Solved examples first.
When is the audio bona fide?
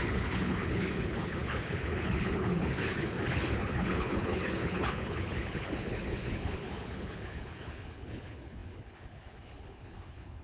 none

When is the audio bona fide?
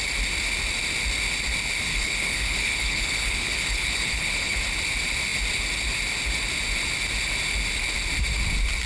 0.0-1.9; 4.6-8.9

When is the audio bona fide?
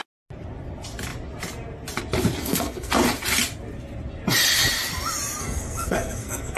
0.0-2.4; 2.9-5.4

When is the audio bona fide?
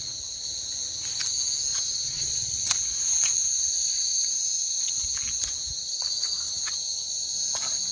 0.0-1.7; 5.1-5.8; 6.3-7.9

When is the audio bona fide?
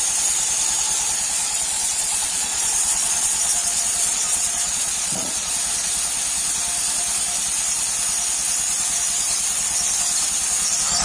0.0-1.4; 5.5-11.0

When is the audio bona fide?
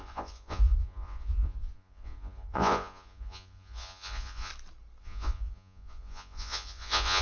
4.5-5.0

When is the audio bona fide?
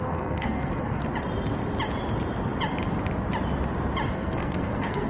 1.0-4.1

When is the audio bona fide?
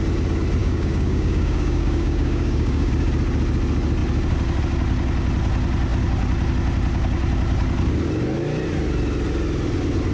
0.0-0.6; 2.9-10.1